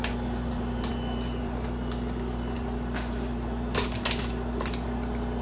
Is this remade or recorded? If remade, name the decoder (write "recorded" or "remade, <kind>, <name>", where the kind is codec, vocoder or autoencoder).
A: recorded